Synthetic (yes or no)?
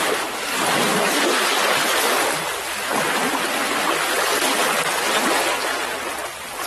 no